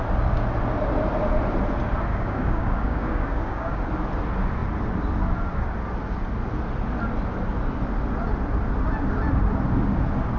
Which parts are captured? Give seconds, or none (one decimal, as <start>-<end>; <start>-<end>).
0.0-2.1; 3.8-10.4